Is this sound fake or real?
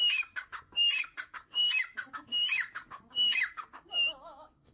fake